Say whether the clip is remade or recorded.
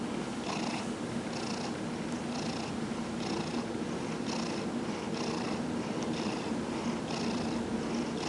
recorded